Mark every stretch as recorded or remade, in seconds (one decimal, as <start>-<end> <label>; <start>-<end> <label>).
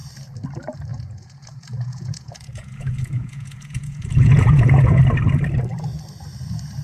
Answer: 0.0-0.9 recorded; 0.9-5.0 remade; 5.0-6.8 recorded